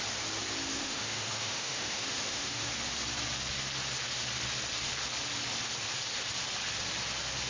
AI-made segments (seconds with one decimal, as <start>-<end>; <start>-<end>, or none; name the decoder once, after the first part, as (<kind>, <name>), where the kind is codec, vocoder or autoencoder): 0.8-2.7 (autoencoder, DAC-VAE)